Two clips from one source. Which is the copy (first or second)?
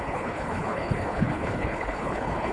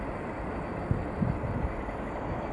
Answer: first